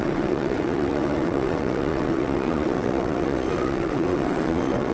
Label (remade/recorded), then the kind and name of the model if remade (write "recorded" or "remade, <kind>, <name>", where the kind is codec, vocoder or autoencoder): remade, vocoder, WaveNeXt